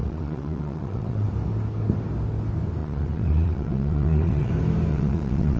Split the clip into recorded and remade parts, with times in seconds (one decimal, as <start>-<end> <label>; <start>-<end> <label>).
0.0-1.3 remade; 1.3-2.8 recorded; 2.8-4.5 remade; 4.5-4.9 recorded; 4.9-5.6 remade